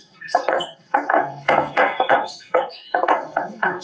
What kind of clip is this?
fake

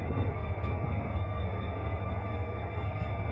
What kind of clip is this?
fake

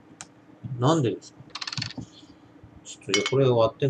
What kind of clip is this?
real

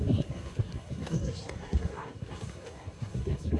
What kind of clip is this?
fake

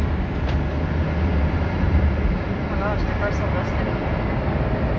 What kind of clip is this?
real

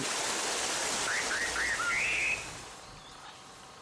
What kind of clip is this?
real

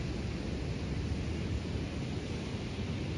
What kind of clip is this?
real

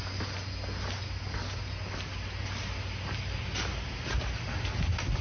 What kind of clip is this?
real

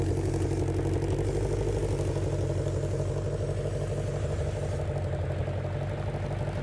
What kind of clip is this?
real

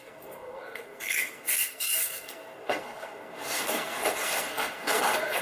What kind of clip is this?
fake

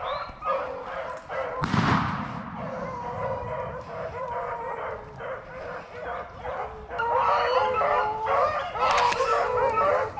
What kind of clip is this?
real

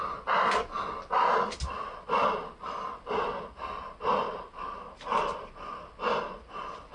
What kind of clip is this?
real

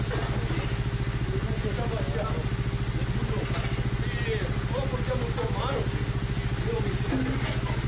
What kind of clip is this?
real